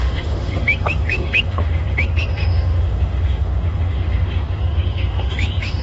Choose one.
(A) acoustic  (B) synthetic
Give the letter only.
B